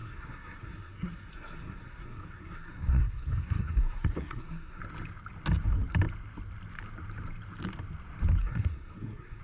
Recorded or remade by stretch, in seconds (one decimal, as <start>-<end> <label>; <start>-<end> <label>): 0.0-4.8 remade; 4.8-8.4 recorded; 8.4-9.4 remade